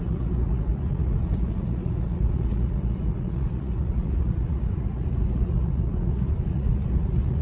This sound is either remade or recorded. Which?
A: remade